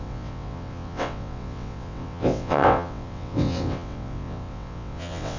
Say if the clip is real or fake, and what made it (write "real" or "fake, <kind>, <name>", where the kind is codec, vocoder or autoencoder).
fake, vocoder, WaveNeXt